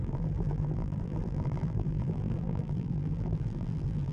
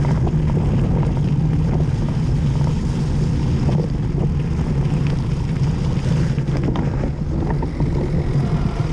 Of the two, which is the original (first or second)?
second